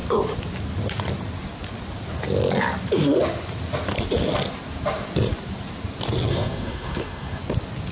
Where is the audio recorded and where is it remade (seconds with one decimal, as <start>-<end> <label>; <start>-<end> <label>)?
0.0-6.3 recorded; 6.3-7.4 remade; 7.4-7.9 recorded